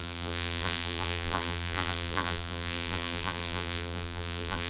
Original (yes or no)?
no